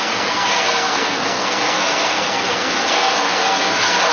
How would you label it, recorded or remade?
remade